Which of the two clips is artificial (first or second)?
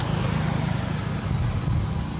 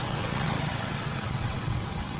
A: second